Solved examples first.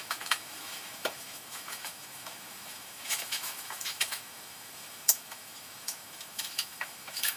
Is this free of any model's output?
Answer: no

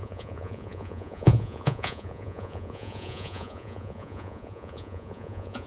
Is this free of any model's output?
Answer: no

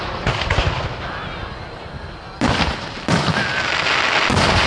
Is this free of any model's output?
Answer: yes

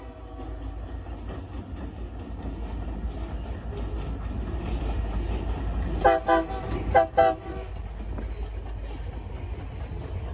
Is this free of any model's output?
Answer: yes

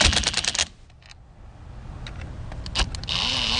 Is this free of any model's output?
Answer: yes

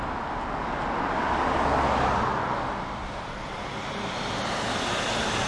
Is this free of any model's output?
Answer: yes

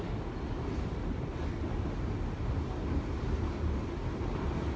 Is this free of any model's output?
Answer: yes